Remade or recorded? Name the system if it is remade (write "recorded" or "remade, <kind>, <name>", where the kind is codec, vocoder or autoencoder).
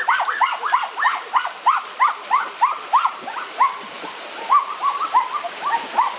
recorded